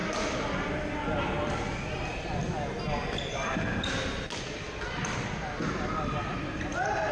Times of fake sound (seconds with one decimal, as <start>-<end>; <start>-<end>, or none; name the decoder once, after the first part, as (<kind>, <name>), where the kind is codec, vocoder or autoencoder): none